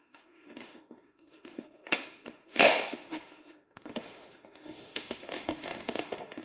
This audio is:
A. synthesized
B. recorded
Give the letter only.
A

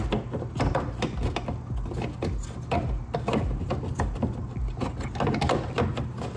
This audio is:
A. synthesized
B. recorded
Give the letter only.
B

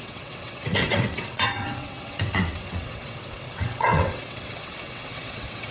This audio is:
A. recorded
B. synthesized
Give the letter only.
B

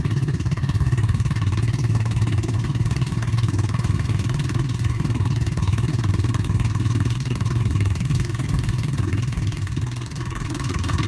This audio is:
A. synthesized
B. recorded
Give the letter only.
A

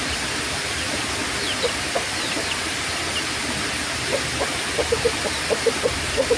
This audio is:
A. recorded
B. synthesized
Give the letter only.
A